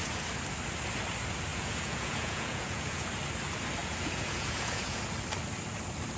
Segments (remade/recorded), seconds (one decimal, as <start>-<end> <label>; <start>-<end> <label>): 0.0-1.5 recorded; 1.5-3.1 remade; 3.1-3.8 recorded; 3.8-5.0 remade; 5.0-6.2 recorded